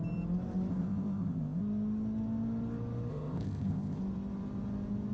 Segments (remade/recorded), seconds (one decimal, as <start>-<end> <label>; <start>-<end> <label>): 0.0-0.7 recorded; 0.7-1.6 remade; 1.6-3.1 recorded; 3.1-4.0 remade; 4.0-5.1 recorded

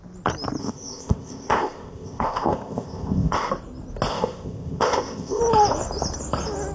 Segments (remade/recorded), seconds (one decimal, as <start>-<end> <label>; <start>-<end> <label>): 0.0-0.6 recorded; 0.6-3.5 remade; 3.5-4.1 recorded; 4.1-5.4 remade; 5.4-6.7 recorded

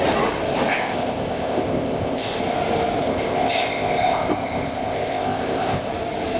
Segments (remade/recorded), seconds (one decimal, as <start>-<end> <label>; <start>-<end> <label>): 0.0-0.7 recorded; 0.7-2.4 remade; 2.4-3.0 recorded; 3.0-5.9 remade; 5.9-6.4 recorded

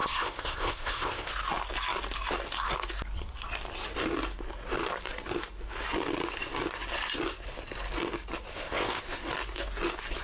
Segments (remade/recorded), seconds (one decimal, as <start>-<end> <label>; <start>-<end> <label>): 0.0-1.3 remade; 1.3-8.5 recorded; 8.5-9.0 remade; 9.0-10.2 recorded